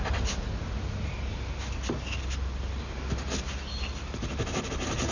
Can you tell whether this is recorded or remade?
recorded